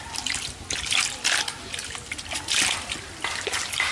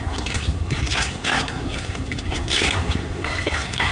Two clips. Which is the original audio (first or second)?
first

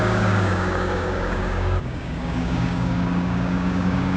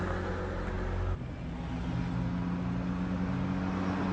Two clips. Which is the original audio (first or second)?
second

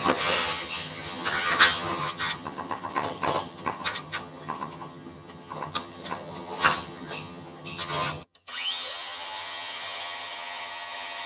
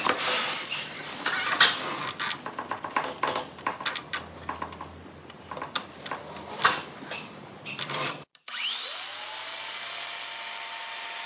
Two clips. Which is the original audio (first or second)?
second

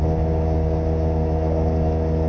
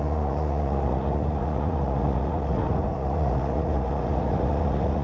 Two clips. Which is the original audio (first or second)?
first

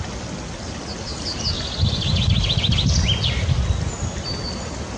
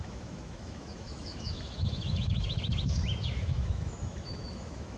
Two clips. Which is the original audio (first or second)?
first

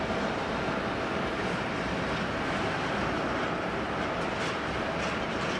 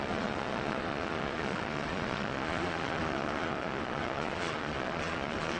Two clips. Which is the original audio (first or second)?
first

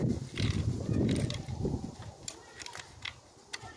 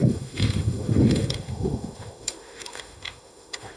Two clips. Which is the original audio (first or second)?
first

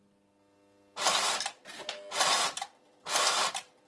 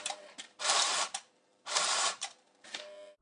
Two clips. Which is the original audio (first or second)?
first